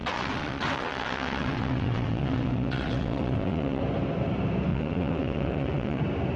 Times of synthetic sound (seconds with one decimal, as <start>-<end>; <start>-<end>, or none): 0.0-3.8; 4.7-6.0